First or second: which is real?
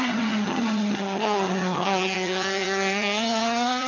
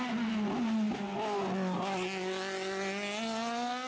second